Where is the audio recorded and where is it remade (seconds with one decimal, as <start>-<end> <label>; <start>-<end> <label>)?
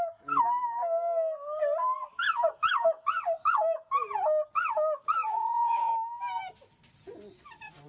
0.0-5.2 recorded; 5.2-5.9 remade; 5.9-7.9 recorded